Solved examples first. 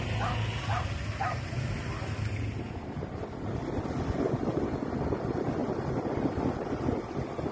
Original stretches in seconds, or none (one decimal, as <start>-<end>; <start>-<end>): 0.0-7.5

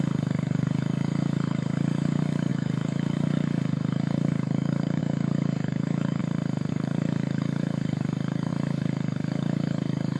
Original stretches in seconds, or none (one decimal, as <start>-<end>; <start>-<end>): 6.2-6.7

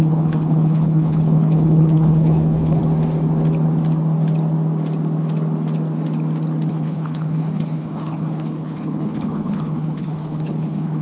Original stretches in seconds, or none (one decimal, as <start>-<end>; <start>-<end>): 2.8-6.7

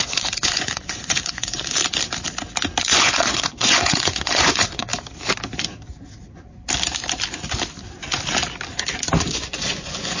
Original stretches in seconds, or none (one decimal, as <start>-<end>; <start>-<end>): 1.8-2.8; 4.9-9.2